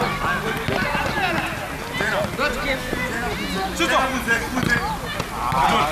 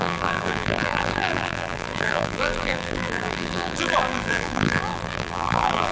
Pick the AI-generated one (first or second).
second